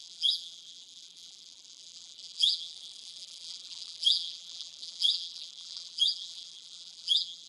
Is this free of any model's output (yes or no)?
no